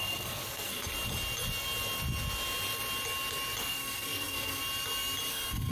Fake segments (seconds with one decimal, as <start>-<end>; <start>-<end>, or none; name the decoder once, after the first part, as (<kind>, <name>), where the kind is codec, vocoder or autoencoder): 0.0-0.9 (codec, SNAC); 3.6-4.6; 5.3-5.7